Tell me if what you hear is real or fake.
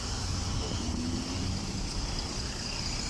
real